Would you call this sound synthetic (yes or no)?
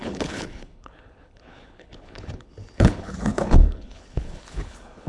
yes